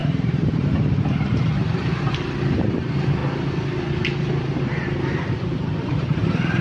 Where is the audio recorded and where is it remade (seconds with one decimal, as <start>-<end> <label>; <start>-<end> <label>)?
0.0-3.2 remade; 3.2-3.9 recorded; 3.9-6.6 remade